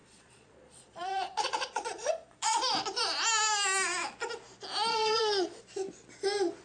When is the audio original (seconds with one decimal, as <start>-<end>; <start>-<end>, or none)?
2.6-4.9; 5.6-6.6